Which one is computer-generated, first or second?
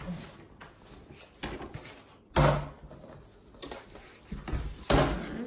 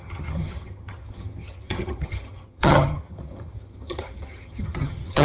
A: second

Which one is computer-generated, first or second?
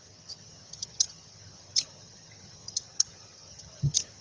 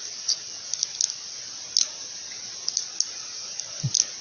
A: first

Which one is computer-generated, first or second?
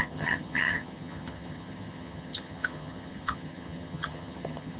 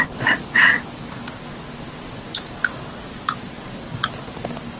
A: first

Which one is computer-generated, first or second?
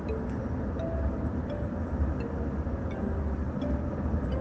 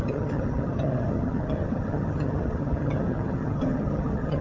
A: second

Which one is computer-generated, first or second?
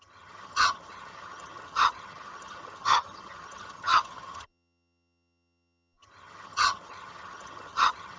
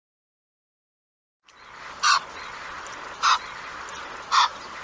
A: first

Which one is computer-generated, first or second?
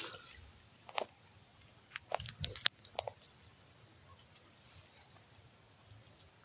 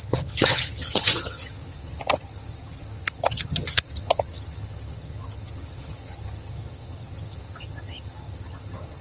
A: second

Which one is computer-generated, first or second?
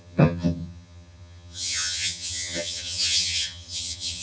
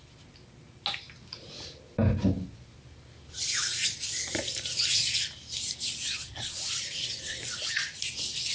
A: first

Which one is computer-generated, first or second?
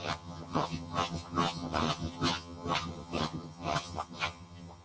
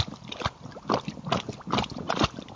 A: first